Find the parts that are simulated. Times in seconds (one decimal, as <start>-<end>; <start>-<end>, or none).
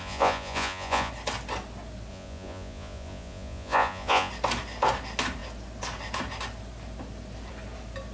0.0-1.1; 2.1-4.3